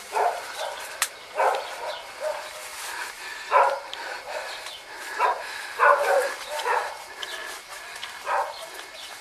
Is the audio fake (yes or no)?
no